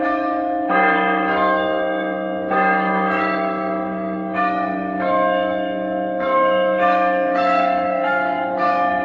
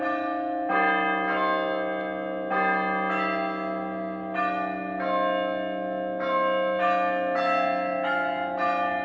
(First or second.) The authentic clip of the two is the second